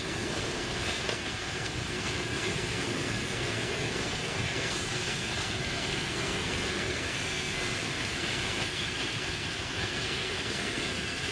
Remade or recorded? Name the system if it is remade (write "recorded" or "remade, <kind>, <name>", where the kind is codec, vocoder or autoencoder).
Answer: remade, codec, SNAC